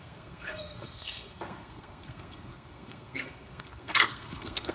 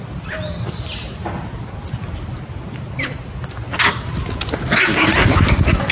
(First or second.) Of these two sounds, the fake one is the first